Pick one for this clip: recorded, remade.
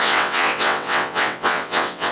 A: remade